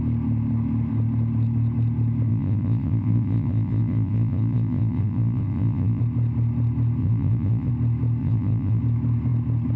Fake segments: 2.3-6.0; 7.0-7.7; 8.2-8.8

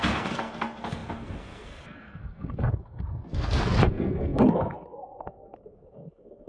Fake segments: 0.0-6.5